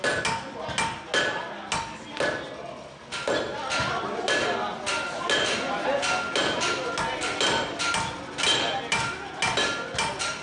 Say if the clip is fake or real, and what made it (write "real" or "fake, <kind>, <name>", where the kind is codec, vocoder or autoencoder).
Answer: real